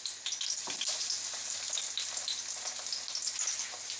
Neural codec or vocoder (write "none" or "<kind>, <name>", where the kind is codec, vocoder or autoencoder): none